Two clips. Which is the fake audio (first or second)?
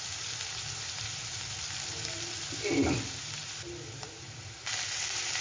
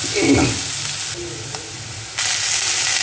first